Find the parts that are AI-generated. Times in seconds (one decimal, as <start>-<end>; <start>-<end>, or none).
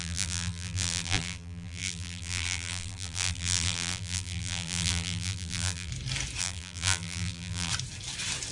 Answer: 0.0-5.9; 6.4-7.7